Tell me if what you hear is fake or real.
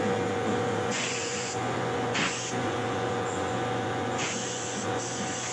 fake